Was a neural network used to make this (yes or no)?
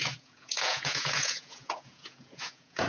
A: yes